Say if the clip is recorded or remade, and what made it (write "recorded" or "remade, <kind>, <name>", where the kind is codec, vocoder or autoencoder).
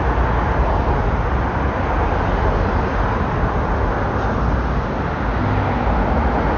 recorded